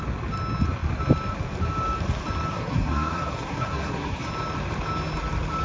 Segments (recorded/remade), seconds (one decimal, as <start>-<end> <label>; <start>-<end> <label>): 0.0-2.5 recorded; 2.5-4.3 remade; 4.3-5.6 recorded